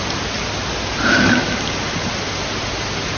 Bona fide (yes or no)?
yes